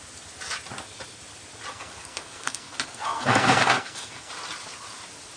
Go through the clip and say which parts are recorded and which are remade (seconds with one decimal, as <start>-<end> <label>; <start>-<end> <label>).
0.0-1.7 recorded; 1.7-4.3 remade; 4.3-5.4 recorded